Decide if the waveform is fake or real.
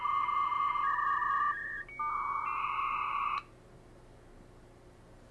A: real